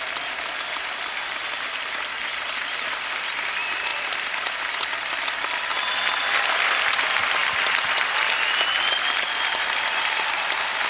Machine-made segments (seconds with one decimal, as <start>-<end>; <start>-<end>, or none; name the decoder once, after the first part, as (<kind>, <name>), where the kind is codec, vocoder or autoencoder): 3.9-6.4 (vocoder, BigVGAN v2)